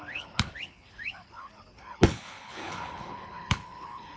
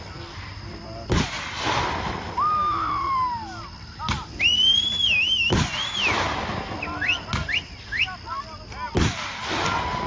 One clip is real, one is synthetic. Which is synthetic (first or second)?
first